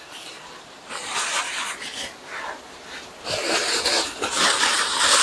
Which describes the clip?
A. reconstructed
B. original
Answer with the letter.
A